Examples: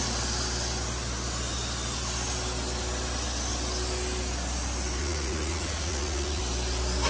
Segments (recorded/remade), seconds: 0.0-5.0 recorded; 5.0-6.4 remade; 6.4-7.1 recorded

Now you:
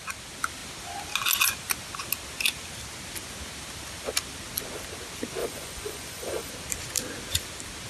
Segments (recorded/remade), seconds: 0.0-5.4 recorded; 5.4-6.5 remade; 6.5-7.9 recorded